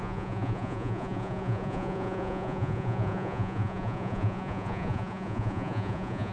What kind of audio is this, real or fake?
fake